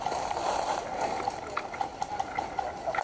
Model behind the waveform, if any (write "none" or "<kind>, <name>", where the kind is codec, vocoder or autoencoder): none